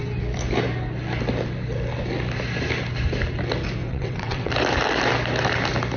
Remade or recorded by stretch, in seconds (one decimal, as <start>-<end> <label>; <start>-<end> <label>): 0.0-3.8 recorded; 3.8-4.5 remade; 4.5-6.0 recorded